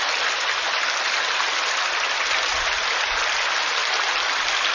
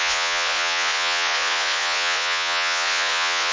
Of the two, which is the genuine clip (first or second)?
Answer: first